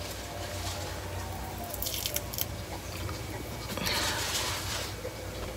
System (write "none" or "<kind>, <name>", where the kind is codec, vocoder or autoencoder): none